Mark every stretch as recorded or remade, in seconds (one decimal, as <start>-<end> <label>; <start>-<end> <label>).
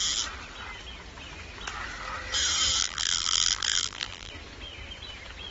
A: 0.0-2.8 recorded; 2.8-4.3 remade; 4.3-5.5 recorded